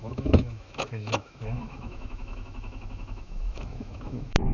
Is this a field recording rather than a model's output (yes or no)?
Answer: no